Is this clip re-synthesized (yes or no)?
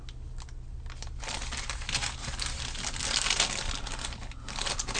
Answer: no